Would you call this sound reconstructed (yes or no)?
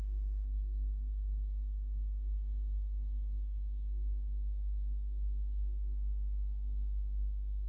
yes